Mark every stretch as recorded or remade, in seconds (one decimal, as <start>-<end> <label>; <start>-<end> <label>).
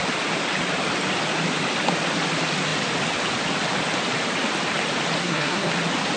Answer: 0.0-5.2 recorded; 5.2-5.7 remade; 5.7-6.2 recorded